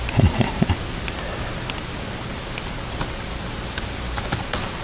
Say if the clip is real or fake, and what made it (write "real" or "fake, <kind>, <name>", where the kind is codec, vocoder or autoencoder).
real